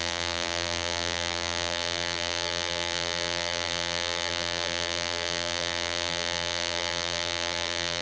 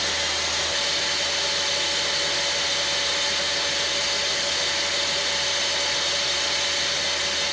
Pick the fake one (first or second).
first